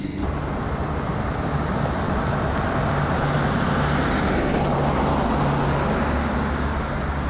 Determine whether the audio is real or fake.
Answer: real